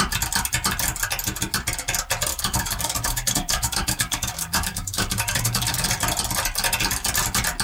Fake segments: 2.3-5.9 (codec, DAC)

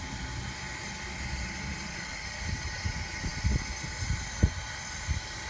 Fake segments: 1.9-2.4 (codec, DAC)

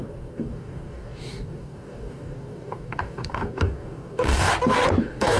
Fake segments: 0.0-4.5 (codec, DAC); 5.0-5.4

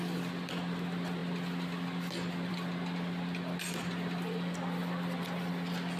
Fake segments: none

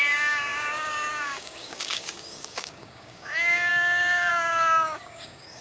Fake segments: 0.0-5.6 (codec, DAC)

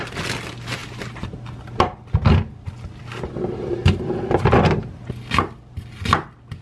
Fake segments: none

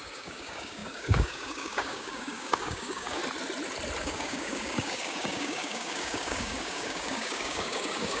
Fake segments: 0.0-3.2 (codec, DAC); 4.0-8.2

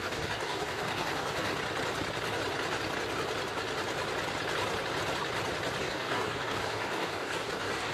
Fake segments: 0.0-1.5 (codec, DAC); 5.8-7.9